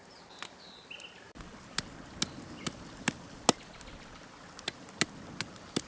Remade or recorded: recorded